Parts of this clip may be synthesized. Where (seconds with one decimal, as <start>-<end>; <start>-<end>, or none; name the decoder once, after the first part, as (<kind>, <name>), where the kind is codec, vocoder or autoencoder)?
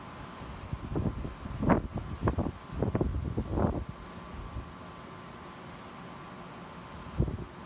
none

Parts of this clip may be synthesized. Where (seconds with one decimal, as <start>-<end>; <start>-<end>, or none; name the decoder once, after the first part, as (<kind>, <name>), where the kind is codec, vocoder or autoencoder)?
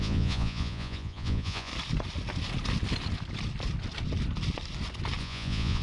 0.0-1.7 (vocoder, Vocos); 5.2-5.8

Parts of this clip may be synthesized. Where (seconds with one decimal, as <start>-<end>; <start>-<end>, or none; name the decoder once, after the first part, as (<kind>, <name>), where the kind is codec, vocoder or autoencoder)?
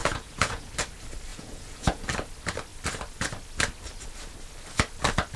0.0-0.7 (vocoder, Vocos); 1.3-2.0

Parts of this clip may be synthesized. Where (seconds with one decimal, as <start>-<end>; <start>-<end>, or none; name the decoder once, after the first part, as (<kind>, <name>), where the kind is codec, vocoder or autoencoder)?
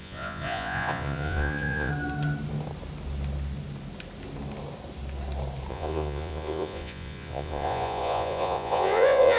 0.0-1.9 (vocoder, Vocos); 5.7-9.4